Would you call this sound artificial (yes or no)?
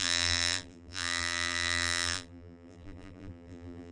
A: yes